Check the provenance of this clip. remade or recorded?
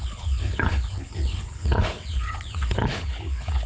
remade